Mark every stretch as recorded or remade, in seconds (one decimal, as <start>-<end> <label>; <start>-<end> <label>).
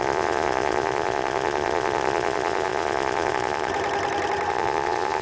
0.0-3.7 remade; 3.7-4.5 recorded; 4.5-5.2 remade